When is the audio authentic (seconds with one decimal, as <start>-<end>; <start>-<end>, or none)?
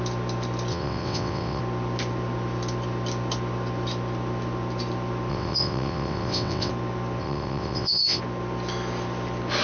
0.0-0.7; 1.6-5.3; 6.7-7.2; 8.2-9.6